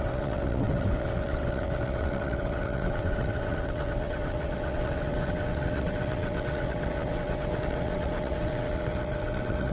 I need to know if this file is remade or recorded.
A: remade